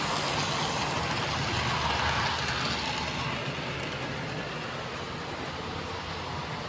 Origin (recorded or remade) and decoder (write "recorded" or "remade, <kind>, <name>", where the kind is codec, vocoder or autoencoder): recorded